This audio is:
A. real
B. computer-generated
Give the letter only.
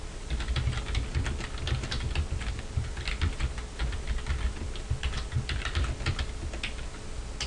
A